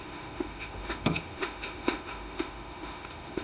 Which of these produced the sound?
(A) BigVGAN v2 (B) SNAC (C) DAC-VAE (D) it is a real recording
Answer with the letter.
C